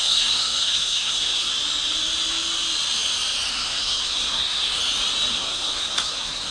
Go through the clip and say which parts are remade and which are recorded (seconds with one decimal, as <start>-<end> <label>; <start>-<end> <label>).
0.0-1.5 remade; 1.5-3.5 recorded; 3.5-4.8 remade; 4.8-5.3 recorded; 5.3-6.5 remade